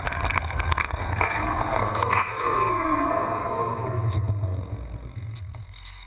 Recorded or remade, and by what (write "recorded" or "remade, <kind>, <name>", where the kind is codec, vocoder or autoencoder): remade, codec, SNAC